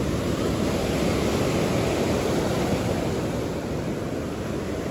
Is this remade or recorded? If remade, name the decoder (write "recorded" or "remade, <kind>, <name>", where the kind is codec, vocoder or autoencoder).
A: recorded